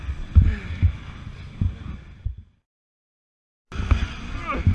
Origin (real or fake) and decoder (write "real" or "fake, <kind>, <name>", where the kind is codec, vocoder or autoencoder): real